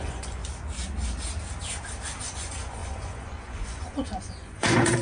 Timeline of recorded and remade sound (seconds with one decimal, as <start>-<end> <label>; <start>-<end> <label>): 0.0-0.4 remade; 0.4-2.2 recorded; 2.2-5.0 remade